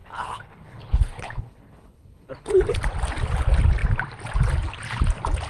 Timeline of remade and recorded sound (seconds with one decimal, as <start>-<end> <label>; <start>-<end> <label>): 0.0-2.5 remade; 2.5-5.5 recorded